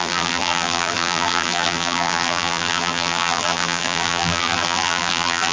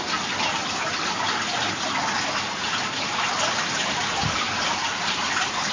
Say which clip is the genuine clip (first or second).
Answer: second